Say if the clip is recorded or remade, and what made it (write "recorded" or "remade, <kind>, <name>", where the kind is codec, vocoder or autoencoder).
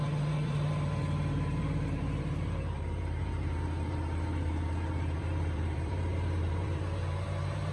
remade, vocoder, BigVGAN v2